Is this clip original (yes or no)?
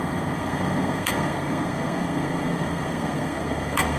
no